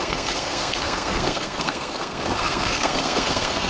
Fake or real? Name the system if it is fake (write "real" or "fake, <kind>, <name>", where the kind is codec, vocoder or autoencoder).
fake, codec, SNAC